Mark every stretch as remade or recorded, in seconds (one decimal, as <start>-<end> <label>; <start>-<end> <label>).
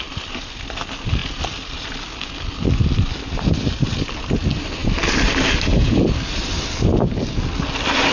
0.0-8.1 recorded